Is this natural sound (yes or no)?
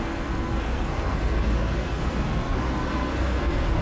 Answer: no